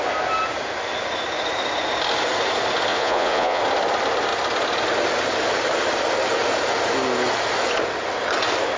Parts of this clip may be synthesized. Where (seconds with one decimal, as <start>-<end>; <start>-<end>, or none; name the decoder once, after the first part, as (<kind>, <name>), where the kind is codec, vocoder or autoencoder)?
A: 2.9-3.6 (vocoder, Vocos)

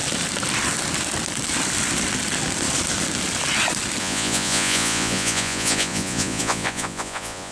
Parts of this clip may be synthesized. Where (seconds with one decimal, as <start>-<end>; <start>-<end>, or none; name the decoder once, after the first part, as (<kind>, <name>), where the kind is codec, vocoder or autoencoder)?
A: 4.0-7.5 (vocoder, Vocos)

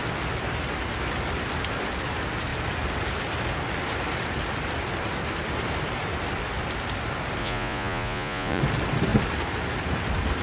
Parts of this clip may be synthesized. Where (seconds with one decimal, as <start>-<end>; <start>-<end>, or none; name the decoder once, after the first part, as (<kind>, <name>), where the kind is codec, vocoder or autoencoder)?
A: 7.4-8.6 (vocoder, Vocos)

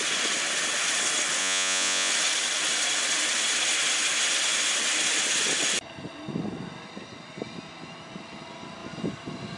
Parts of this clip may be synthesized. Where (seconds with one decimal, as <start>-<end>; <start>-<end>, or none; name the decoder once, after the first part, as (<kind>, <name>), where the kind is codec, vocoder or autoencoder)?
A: 1.4-2.1 (vocoder, Vocos)

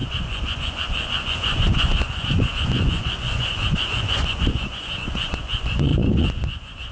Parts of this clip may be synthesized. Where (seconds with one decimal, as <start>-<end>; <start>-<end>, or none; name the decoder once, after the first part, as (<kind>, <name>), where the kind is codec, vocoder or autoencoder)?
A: 0.0-6.9 (vocoder, Vocos)

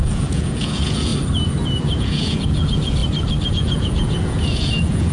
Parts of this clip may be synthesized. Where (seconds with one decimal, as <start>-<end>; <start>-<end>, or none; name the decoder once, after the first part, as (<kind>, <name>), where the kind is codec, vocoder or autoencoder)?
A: 0.0-1.1 (vocoder, Vocos); 2.0-3.0; 3.5-5.1

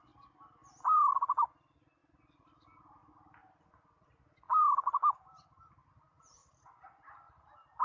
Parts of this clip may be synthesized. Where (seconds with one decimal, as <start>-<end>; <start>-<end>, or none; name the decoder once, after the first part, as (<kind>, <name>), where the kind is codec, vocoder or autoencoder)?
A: none